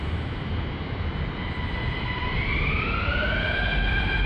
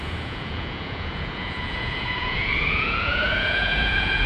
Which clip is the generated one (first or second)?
second